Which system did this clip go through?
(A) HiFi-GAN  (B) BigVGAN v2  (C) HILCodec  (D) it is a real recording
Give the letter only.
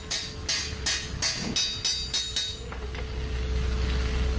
D